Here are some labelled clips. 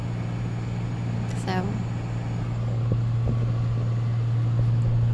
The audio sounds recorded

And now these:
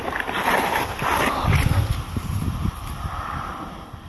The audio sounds recorded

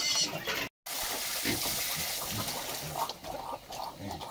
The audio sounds recorded